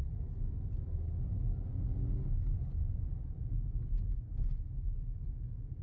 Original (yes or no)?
yes